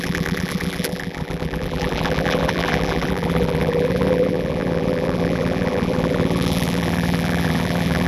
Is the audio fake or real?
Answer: fake